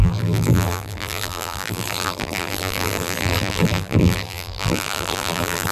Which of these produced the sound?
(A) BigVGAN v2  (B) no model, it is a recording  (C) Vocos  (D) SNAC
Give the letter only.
A